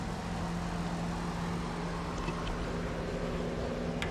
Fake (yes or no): no